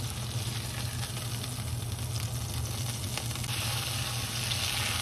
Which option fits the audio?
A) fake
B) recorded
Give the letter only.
B